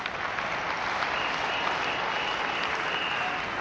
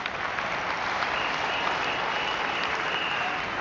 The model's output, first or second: second